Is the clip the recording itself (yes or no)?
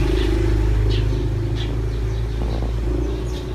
yes